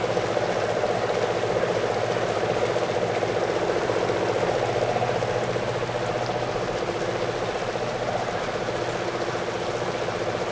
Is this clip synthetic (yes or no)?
no